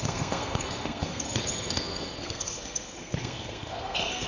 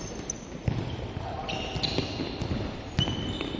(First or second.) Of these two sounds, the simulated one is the first